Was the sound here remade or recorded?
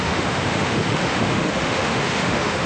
remade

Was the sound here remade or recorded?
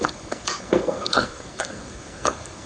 remade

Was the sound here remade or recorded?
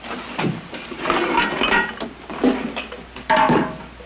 recorded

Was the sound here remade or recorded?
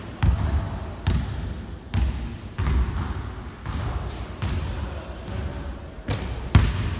recorded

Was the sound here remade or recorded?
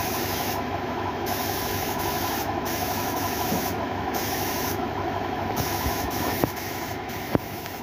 remade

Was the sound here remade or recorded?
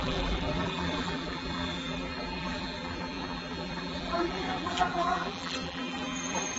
remade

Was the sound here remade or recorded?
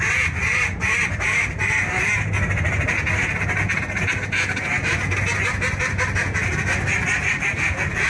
recorded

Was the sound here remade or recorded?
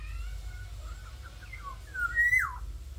recorded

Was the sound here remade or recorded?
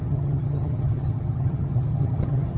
remade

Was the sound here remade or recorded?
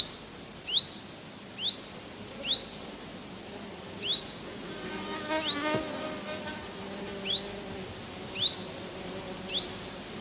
recorded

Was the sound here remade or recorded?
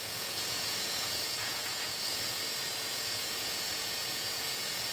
remade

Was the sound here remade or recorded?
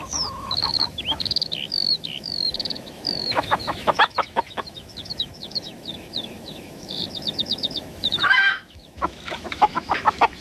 remade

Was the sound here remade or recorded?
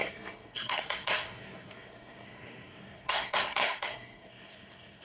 remade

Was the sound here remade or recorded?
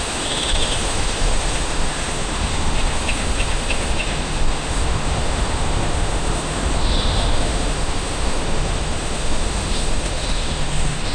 remade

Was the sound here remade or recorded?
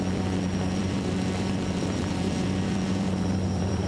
remade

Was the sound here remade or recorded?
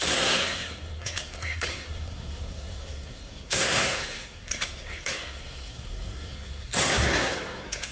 remade